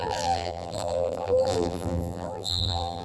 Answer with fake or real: fake